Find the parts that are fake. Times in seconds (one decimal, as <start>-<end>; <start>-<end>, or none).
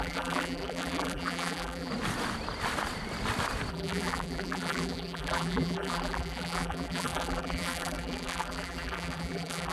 0.0-1.9; 3.7-9.7